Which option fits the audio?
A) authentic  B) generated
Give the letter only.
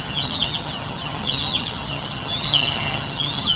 B